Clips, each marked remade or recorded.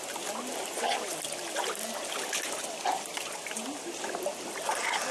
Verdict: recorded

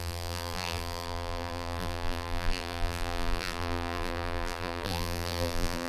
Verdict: remade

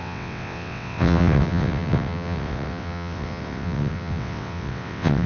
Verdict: remade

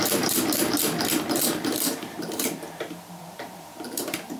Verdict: remade